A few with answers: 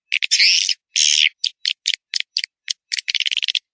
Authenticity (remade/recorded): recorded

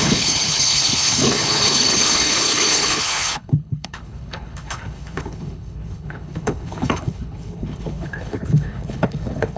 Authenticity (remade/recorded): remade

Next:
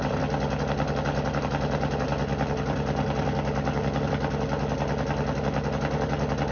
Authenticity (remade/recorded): recorded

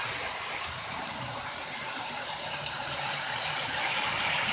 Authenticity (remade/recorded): remade